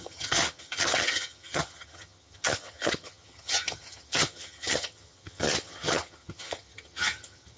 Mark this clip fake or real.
fake